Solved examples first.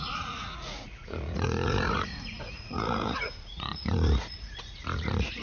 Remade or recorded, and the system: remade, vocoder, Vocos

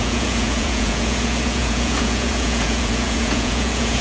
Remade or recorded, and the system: remade, vocoder, Vocos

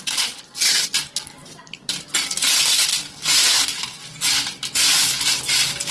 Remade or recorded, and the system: recorded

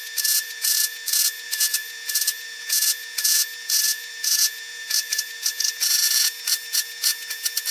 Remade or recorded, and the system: remade, vocoder, Vocos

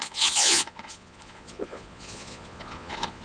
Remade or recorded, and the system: remade, vocoder, Vocos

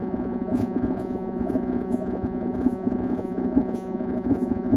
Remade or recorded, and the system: remade, vocoder, Vocos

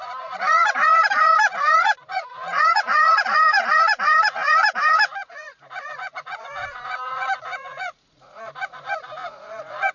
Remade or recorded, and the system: remade, vocoder, Vocos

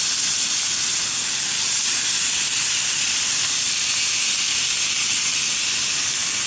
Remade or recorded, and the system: recorded